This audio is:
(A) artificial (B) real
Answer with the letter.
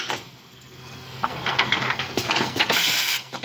A